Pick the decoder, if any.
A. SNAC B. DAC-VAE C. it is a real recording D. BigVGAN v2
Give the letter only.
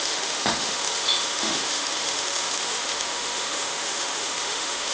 B